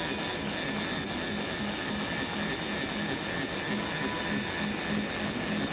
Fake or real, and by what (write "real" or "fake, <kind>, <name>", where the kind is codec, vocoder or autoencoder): real